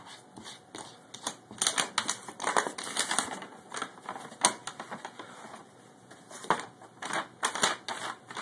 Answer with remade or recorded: recorded